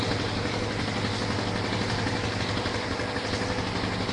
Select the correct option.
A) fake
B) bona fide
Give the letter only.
B